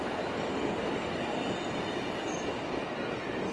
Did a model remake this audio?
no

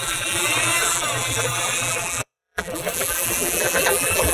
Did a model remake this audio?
yes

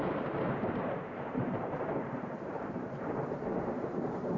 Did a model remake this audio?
yes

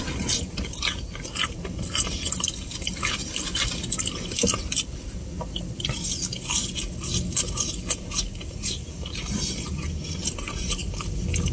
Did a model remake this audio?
no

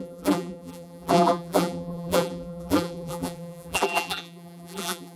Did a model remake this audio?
yes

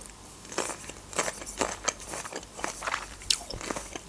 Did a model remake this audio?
yes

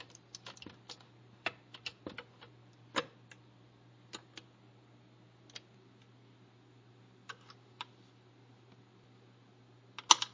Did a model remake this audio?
no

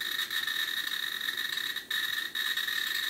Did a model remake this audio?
no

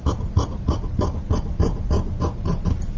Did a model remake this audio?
no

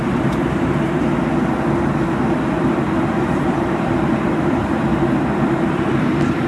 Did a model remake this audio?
yes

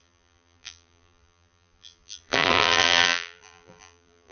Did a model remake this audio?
yes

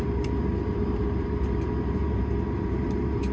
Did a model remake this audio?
yes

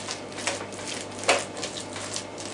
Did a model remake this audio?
no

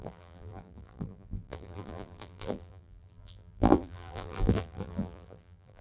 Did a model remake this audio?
yes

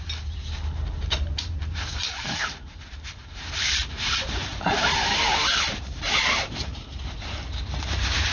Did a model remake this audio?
yes